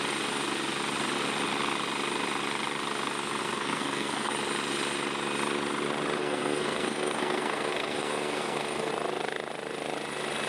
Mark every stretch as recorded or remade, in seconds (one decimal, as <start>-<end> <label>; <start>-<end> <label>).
0.0-3.4 recorded; 3.4-4.3 remade; 4.3-6.2 recorded; 6.2-8.9 remade; 8.9-10.5 recorded